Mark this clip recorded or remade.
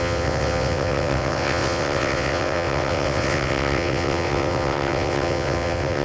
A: remade